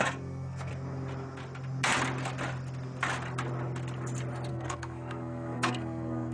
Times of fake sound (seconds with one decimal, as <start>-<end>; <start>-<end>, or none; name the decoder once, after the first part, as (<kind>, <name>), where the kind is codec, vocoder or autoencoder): 0.0-0.7 (codec, SNAC); 4.5-6.3